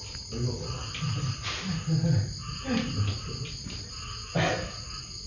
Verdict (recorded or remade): recorded